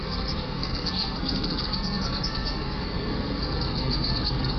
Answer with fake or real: fake